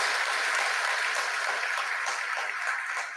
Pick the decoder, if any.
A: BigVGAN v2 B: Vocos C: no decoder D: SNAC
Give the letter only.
C